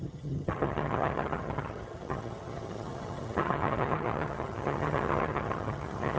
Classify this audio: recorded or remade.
remade